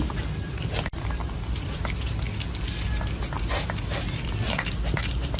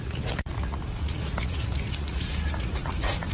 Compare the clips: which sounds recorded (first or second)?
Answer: first